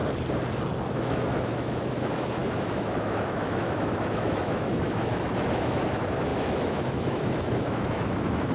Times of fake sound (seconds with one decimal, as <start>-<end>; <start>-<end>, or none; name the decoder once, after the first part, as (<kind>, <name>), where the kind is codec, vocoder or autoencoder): 0.9-8.5 (autoencoder, DAC-VAE)